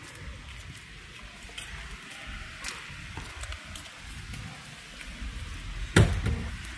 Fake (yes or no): no